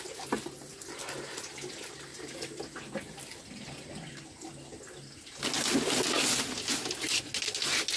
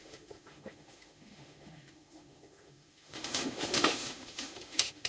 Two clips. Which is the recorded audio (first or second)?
first